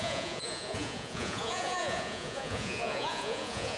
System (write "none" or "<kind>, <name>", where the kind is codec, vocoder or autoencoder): vocoder, Vocos